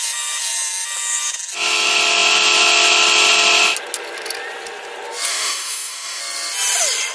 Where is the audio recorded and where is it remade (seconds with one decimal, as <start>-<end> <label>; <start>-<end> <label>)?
0.0-5.3 recorded; 5.3-6.2 remade; 6.2-7.1 recorded